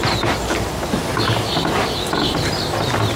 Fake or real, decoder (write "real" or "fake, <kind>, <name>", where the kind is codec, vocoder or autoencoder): real